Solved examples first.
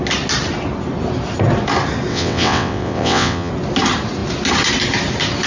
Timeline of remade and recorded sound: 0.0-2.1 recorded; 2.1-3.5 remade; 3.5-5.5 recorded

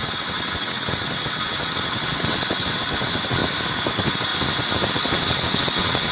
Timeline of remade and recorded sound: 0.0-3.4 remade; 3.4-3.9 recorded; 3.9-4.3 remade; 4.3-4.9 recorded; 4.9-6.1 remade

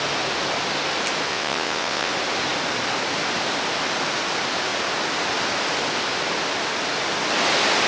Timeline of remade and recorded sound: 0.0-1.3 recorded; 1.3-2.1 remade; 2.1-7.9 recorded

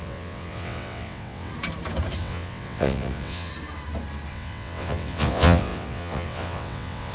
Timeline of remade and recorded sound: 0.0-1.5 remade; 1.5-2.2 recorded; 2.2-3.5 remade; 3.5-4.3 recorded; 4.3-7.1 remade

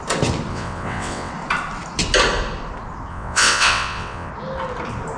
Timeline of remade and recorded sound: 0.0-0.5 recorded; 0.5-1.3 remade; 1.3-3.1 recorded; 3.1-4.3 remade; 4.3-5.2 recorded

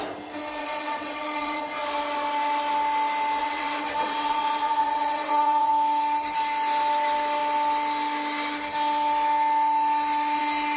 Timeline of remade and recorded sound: 0.0-0.6 recorded; 0.6-1.8 remade; 1.8-3.4 recorded; 3.4-5.7 remade; 5.7-10.8 recorded